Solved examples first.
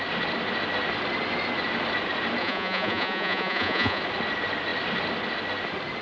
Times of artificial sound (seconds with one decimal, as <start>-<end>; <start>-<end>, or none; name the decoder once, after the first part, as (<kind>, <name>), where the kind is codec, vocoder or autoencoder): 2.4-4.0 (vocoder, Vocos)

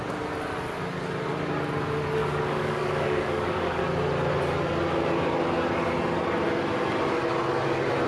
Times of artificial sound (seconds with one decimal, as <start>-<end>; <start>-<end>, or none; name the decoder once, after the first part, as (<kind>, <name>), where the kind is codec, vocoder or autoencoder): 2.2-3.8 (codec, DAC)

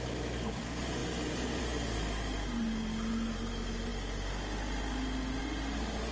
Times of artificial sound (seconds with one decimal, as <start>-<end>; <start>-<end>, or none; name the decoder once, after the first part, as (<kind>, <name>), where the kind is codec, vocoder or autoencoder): none

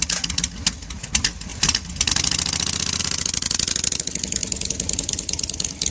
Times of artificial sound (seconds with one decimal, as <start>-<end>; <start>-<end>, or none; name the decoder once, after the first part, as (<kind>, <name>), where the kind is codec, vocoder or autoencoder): 4.4-5.9 (vocoder, BigVGAN v2)

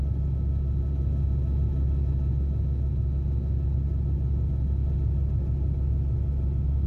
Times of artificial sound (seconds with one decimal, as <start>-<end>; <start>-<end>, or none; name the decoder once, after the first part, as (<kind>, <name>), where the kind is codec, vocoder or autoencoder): none

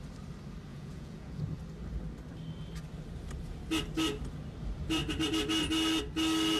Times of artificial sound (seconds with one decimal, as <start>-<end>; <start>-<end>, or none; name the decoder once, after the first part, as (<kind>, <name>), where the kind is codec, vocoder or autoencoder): 0.7-1.4 (vocoder, Vocos)

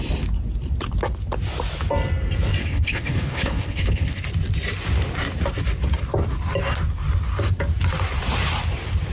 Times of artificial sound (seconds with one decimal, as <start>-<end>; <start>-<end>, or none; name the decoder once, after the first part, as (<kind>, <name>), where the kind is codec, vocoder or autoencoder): 2.6-4.2 (codec, HILCodec)